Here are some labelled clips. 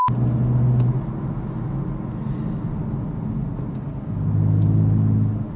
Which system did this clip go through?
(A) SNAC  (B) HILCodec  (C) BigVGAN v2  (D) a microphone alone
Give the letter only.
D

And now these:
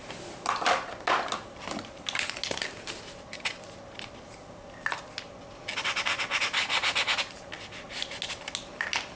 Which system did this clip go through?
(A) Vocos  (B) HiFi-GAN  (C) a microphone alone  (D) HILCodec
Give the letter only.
C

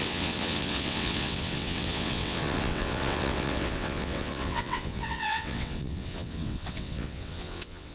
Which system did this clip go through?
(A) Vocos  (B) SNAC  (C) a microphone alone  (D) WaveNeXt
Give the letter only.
D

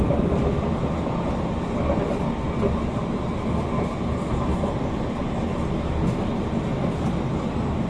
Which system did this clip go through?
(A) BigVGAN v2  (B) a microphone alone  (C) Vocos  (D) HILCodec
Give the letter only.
B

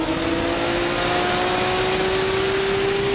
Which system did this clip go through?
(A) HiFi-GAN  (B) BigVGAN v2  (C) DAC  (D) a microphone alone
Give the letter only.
D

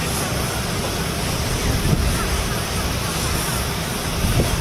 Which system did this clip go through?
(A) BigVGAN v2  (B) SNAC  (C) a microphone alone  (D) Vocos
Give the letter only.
C